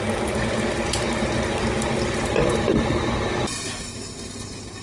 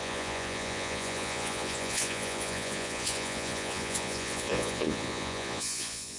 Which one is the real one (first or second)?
first